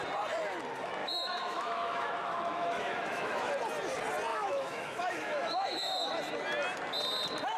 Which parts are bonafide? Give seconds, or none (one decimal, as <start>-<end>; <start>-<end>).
0.0-1.0; 3.5-4.3; 6.1-7.6